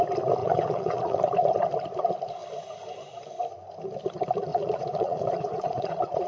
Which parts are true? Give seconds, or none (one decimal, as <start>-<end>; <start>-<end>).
0.0-0.4; 1.2-4.5